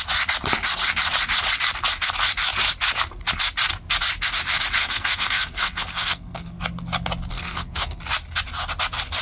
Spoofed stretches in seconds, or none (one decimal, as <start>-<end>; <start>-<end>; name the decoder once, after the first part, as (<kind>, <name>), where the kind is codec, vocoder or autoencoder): 4.8-6.6 (codec, SNAC); 7.3-8.0